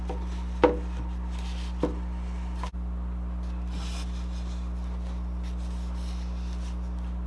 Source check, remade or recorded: recorded